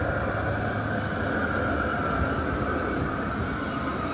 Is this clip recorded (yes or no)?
yes